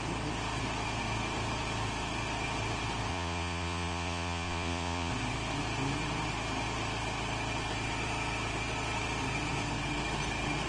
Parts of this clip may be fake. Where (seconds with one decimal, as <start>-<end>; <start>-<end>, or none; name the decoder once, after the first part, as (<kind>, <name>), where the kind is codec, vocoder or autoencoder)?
3.1-5.1 (vocoder, Vocos)